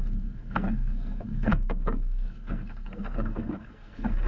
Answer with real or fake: fake